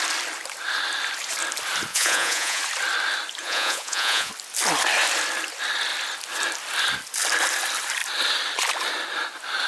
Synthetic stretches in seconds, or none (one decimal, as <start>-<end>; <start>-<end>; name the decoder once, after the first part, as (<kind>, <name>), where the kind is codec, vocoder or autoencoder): 1.9-2.6 (vocoder, Vocos); 3.4-4.3